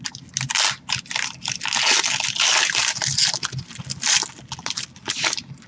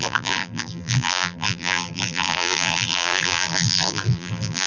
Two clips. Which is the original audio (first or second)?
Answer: first